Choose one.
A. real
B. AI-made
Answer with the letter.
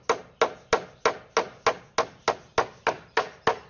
A